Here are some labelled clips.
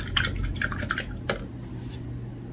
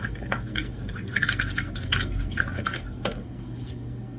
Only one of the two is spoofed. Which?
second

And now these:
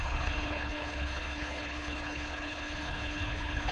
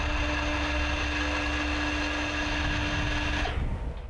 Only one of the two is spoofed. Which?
first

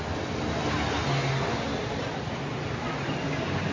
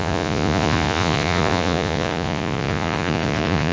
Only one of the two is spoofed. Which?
second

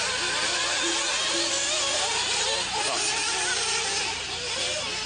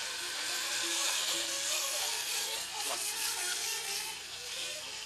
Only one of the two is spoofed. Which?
second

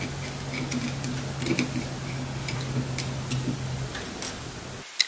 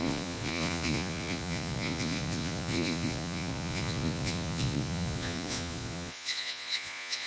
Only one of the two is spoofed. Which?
second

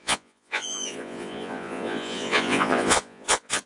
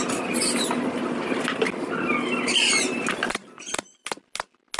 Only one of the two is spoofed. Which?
first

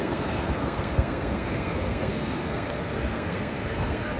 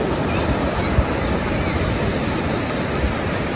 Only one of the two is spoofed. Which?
first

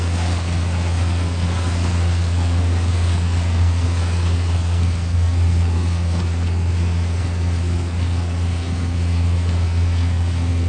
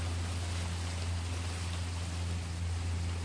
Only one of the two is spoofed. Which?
first